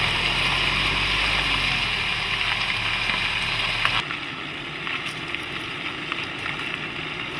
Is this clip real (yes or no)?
yes